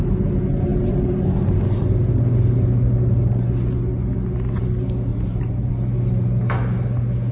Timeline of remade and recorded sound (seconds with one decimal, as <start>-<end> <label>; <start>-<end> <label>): 0.0-5.1 recorded; 5.1-5.7 remade; 5.7-7.3 recorded